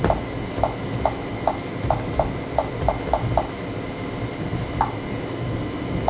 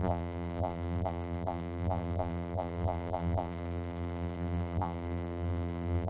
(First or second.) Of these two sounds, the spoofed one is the second